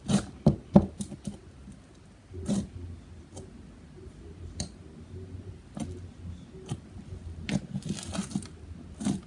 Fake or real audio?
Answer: real